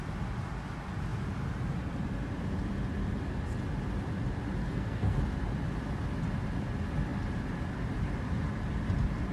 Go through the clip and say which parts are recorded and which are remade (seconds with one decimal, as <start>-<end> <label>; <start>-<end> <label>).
0.0-4.6 recorded; 4.6-5.2 remade; 5.2-9.3 recorded